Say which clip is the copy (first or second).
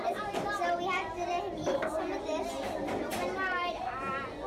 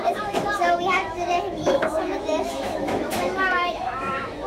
second